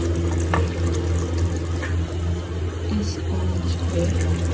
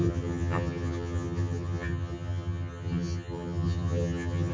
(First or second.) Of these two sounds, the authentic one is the first